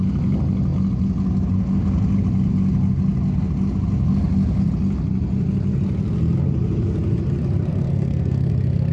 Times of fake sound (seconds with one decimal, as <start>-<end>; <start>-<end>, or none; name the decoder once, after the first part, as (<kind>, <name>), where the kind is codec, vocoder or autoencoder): 7.7-8.5 (codec, SNAC)